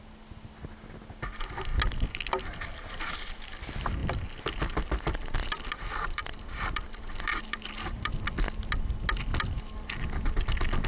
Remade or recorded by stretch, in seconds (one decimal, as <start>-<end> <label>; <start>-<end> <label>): 0.0-4.0 recorded; 4.0-8.2 remade; 8.2-9.3 recorded; 9.3-9.9 remade; 9.9-10.9 recorded